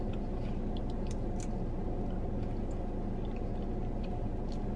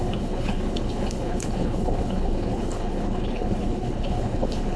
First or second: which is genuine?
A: first